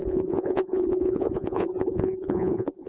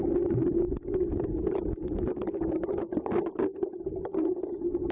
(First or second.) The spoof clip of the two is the first